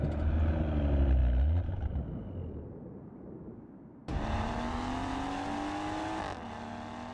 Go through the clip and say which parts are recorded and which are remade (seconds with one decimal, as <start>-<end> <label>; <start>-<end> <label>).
0.0-4.0 recorded; 4.0-4.5 remade; 4.5-7.1 recorded